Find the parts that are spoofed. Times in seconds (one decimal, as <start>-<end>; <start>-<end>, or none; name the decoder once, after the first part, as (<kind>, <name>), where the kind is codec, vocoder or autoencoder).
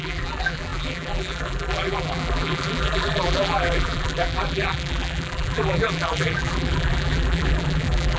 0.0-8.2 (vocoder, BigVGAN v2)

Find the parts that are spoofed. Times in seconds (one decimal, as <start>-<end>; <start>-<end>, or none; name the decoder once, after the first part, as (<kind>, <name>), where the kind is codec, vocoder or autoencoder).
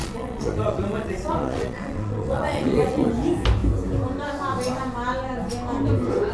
0.0-3.1 (vocoder, Vocos)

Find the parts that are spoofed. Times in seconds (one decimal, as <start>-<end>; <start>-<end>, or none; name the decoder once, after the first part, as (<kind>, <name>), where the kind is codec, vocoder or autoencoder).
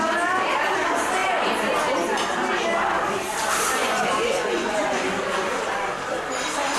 3.8-5.1 (vocoder, Vocos)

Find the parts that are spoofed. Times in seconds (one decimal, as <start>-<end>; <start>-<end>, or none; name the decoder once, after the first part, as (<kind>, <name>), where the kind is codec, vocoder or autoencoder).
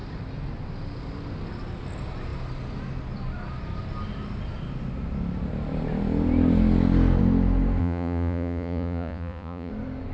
7.8-9.7 (vocoder, Vocos)